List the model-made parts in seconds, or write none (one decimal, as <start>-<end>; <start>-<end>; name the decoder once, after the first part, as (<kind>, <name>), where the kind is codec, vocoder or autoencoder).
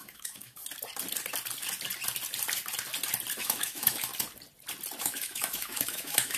0.0-0.6 (autoencoder, DAC-VAE); 3.4-4.1; 5.0-6.4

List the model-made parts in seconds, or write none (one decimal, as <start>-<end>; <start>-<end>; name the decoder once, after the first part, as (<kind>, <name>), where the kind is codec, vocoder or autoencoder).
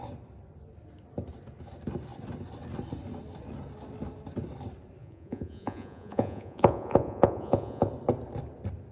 5.0-7.9 (vocoder, Vocos)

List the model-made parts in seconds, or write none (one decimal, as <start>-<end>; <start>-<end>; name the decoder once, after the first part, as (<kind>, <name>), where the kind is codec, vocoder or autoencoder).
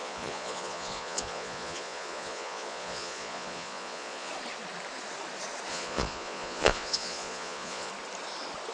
0.0-4.3 (vocoder, Vocos); 5.7-7.9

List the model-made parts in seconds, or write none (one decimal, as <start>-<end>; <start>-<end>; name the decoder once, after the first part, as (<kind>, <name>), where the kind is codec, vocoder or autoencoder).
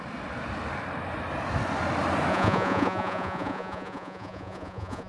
2.3-5.1 (vocoder, Vocos)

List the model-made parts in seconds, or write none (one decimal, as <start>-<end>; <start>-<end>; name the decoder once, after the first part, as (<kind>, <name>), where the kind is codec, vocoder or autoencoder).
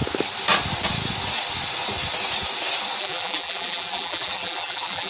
3.0-5.1 (vocoder, BigVGAN v2)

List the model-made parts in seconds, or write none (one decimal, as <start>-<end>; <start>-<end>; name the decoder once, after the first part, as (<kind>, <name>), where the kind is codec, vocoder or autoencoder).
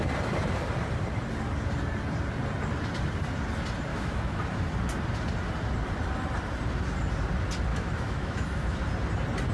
3.9-4.4 (autoencoder, DAC-VAE); 7.7-8.8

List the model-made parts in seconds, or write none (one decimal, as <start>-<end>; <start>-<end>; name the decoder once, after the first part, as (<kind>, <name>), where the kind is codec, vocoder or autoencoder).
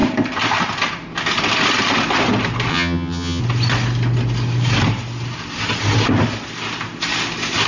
2.7-3.4 (vocoder, HiFi-GAN)